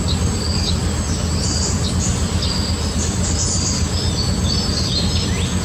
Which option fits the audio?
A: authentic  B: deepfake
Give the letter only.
A